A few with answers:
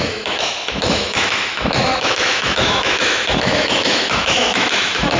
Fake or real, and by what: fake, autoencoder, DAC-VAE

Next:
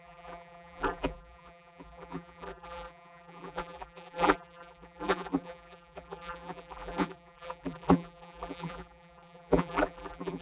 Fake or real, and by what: fake, vocoder, BigVGAN v2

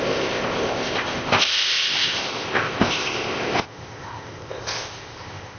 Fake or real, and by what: fake, codec, ZipCodec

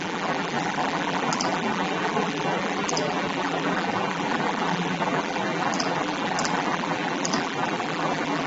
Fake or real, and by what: fake, vocoder, BigVGAN v2